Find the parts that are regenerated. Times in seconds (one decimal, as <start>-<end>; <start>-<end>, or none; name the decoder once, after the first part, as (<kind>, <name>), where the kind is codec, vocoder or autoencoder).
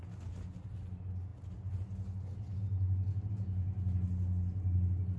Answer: none